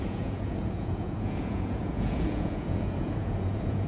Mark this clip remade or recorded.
remade